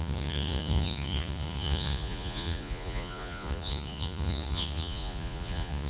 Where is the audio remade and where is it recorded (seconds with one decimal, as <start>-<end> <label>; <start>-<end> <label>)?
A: 0.0-5.9 remade